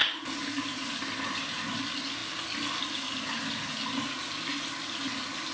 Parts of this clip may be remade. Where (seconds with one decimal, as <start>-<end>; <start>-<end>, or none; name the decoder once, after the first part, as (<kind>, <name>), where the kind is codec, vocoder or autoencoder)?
none